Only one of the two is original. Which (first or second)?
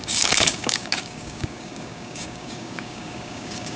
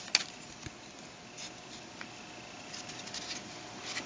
second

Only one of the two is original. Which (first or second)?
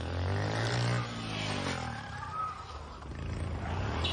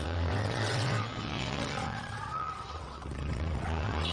first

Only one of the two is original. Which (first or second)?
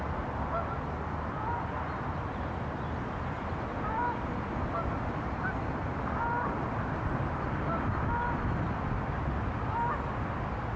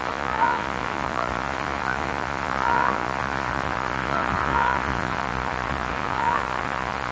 first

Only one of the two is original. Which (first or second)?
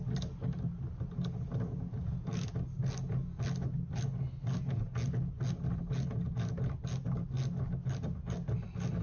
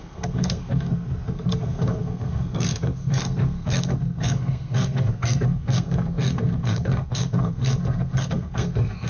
first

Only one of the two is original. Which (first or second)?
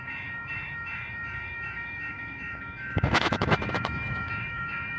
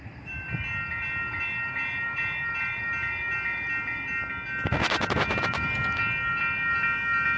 second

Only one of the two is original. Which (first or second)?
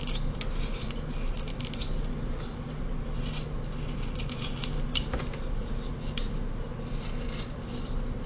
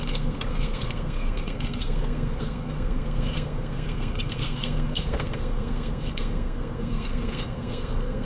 first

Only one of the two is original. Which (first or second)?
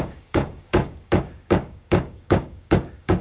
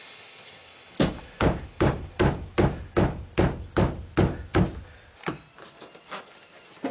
second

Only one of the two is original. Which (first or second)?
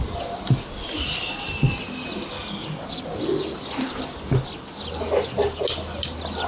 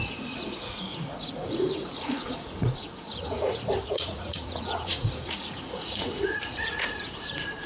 first